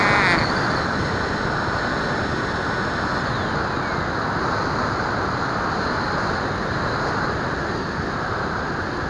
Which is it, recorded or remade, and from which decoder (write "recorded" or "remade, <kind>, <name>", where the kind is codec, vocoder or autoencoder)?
recorded